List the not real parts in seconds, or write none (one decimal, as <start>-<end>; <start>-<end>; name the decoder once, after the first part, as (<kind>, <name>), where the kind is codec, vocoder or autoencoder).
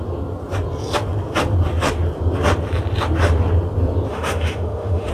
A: 4.1-5.1 (autoencoder, DAC-VAE)